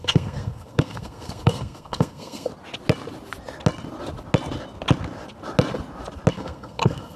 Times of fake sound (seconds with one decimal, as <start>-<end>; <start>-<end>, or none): 0.0-2.5; 6.3-7.2